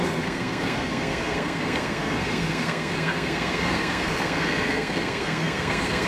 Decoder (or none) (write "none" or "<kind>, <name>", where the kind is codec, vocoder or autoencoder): codec, SNAC